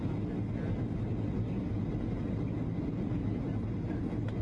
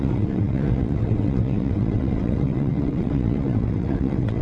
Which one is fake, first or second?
second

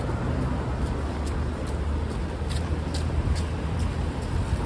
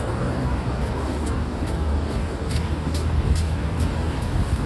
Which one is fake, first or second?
second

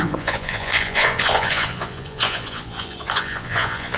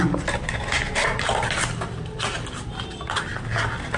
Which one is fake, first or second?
first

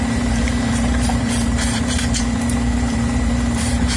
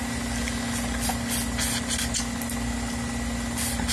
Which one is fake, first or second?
first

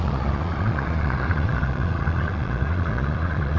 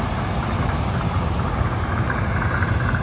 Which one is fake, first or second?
first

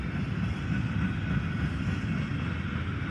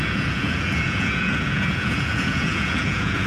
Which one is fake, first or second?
second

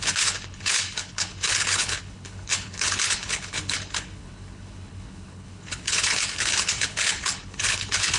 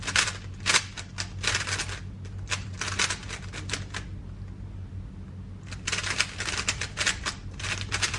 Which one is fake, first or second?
first